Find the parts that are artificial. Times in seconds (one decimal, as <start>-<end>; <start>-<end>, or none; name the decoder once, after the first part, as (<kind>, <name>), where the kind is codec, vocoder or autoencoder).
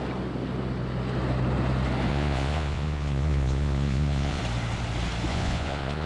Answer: 2.1-4.4 (vocoder, Vocos); 5.3-6.1